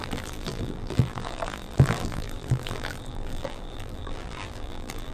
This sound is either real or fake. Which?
fake